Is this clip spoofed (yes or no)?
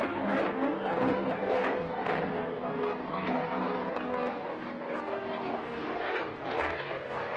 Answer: yes